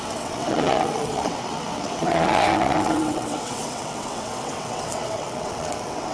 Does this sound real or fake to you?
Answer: fake